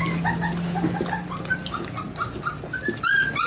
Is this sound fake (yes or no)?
no